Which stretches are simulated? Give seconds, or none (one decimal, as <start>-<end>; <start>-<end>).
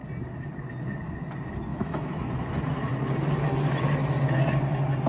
1.7-2.3